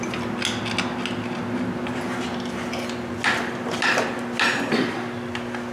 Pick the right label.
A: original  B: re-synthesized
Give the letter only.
A